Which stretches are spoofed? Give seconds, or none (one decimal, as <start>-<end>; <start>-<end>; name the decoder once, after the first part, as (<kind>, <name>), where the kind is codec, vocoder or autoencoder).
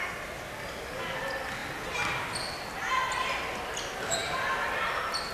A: none